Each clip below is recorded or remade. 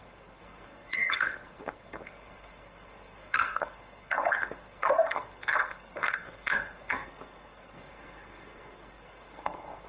remade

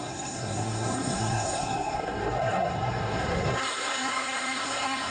remade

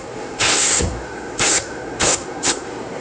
remade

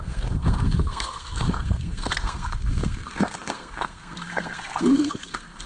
remade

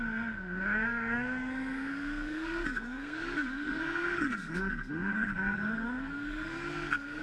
remade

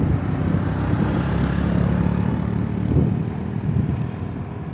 recorded